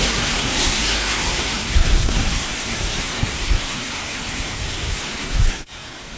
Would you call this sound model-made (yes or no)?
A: yes